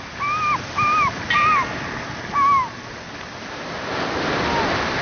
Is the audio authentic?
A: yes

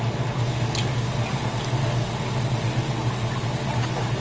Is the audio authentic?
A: yes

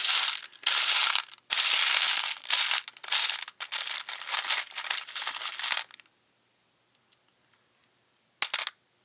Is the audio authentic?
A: yes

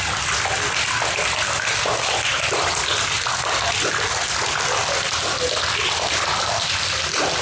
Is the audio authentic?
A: yes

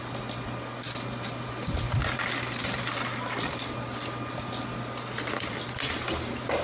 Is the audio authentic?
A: yes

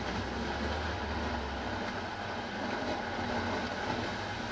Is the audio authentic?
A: yes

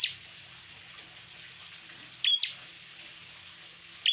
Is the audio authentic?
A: yes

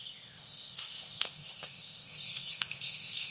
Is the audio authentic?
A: no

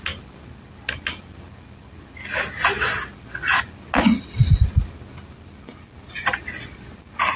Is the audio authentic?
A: yes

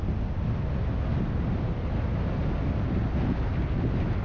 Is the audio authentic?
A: yes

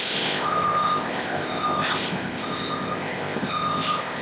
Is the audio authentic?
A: no